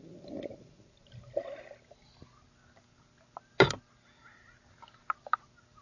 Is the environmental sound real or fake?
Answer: real